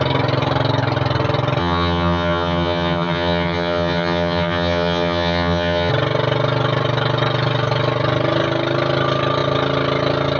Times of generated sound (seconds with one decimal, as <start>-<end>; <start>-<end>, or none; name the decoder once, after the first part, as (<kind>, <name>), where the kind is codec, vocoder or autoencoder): 1.6-5.9 (vocoder, HiFi-GAN)